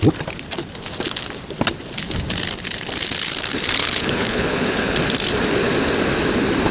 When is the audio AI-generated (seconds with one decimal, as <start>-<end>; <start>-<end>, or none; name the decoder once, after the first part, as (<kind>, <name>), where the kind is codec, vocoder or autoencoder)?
3.8-5.0 (codec, HILCodec)

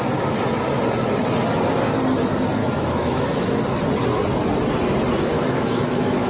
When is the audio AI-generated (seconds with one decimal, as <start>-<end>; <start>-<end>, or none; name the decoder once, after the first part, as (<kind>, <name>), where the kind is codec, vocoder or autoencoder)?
2.6-3.6 (autoencoder, DAC-VAE); 5.3-6.3

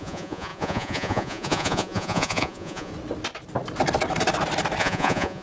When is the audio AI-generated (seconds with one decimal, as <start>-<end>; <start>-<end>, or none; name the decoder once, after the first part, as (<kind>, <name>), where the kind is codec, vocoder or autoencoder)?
0.0-2.9 (vocoder, Vocos); 4.8-5.4

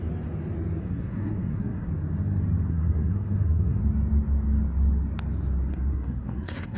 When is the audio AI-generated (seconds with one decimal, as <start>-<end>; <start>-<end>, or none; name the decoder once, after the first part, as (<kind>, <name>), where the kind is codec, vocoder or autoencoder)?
0.8-1.9 (codec, SNAC); 2.7-3.8; 5.7-6.8

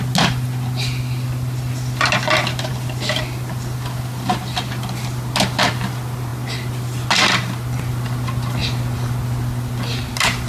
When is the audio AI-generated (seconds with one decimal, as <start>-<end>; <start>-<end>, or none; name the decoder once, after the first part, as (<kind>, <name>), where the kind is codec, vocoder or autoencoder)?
none

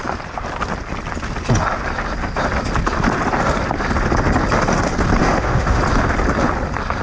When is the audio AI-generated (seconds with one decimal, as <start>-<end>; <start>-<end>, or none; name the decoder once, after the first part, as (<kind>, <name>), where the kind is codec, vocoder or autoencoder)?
5.2-5.8 (autoencoder, DAC-VAE)

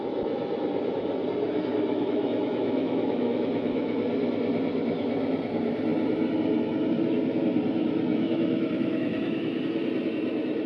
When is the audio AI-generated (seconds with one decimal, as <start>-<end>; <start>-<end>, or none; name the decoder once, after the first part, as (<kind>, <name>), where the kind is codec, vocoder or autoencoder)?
1.9-4.0 (autoencoder, DAC-VAE); 8.1-9.6